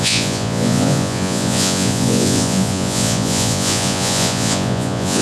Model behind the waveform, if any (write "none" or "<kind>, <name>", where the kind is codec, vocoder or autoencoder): vocoder, Vocos